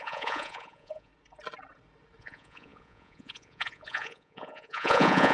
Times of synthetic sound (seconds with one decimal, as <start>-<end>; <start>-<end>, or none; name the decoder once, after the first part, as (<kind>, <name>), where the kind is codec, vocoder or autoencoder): 0.0-1.1 (vocoder, Vocos); 2.2-5.3

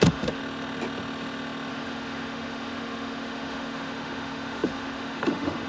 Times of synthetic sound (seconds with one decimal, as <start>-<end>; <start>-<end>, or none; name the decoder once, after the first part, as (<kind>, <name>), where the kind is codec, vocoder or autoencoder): 0.0-0.4 (autoencoder, DAC-VAE); 1.7-5.7

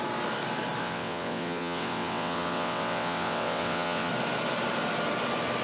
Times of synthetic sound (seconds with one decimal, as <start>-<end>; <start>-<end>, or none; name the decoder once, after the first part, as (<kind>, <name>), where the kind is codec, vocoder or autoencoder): 0.8-4.1 (vocoder, WaveNeXt)

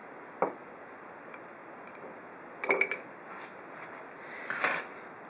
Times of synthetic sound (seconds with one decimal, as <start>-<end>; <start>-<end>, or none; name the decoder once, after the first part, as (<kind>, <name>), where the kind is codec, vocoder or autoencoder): none